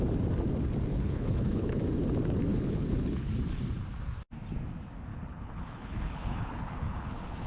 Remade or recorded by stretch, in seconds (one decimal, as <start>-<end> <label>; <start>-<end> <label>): 0.0-0.9 recorded; 0.9-1.8 remade; 1.8-2.5 recorded; 2.5-3.3 remade; 3.3-5.1 recorded; 5.1-7.5 remade